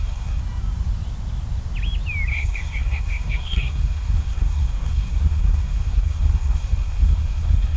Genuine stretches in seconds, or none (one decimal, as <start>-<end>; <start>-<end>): 0.4-2.3